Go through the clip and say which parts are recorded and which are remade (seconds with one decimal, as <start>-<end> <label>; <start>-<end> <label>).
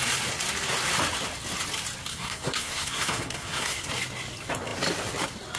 0.0-2.1 recorded; 2.1-3.9 remade; 3.9-5.6 recorded